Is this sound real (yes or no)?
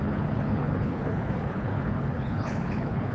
no